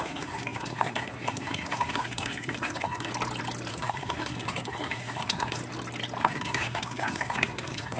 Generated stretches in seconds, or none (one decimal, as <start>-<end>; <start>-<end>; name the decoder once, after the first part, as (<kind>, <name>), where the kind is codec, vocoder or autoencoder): 0.0-3.1 (codec, SNAC); 3.7-5.6; 6.2-8.0